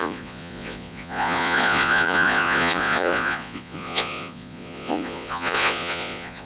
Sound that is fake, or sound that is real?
fake